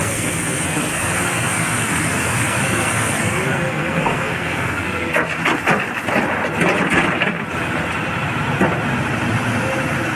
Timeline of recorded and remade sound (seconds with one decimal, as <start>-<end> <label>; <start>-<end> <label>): 0.0-5.3 remade; 5.3-10.2 recorded

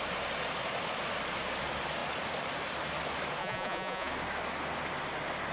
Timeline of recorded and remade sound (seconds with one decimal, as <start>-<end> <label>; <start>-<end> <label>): 0.0-3.4 recorded; 3.4-4.1 remade; 4.1-5.5 recorded